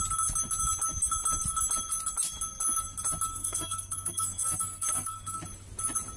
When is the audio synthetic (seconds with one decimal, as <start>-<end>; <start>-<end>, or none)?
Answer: 3.3-5.4